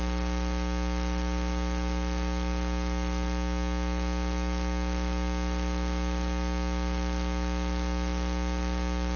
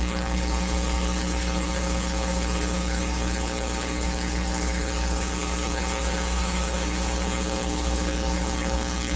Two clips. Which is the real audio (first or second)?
first